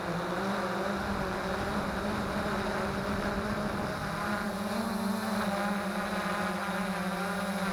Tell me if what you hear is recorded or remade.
recorded